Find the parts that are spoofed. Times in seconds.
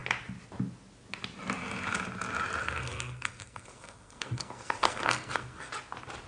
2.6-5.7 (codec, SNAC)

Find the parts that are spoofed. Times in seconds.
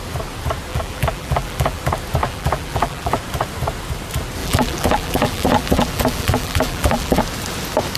0.7-1.8 (vocoder, BigVGAN v2); 2.2-3.2; 4.4-7.2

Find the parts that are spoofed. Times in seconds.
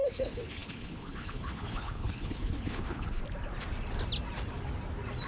0.0-3.2 (codec, HILCodec)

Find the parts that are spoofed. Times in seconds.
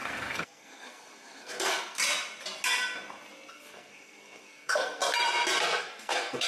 0.0-2.0 (codec, SNAC); 3.5-5.0; 5.8-6.5